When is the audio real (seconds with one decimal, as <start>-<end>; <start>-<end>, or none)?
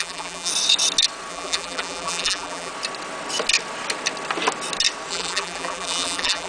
0.5-1.3; 2.7-5.1